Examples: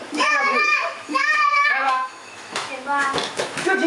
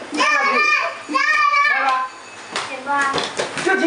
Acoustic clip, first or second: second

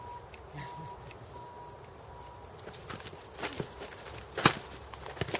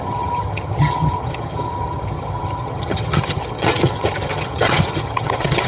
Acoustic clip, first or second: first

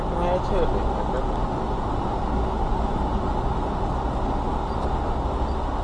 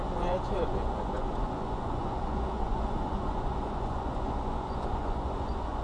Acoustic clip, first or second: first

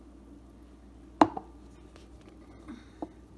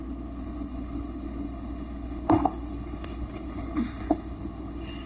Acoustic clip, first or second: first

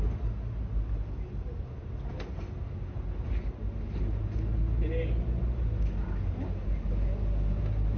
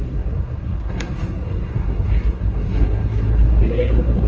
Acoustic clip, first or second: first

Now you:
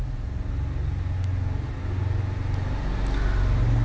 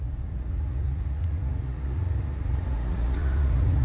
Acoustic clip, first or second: first